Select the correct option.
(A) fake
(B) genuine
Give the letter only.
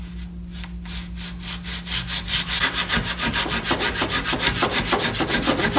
B